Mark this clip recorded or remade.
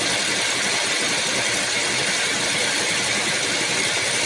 remade